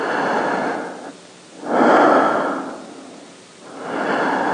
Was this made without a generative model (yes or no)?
yes